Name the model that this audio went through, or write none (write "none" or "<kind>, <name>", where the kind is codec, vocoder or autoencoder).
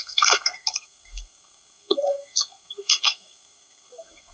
codec, SNAC